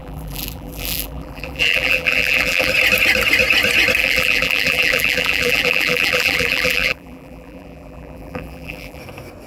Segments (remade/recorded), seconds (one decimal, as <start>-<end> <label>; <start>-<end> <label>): 0.0-2.7 remade; 2.7-4.0 recorded; 4.0-9.0 remade; 9.0-9.5 recorded